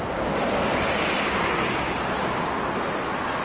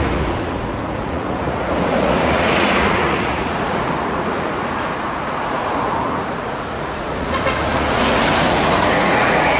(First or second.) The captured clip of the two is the first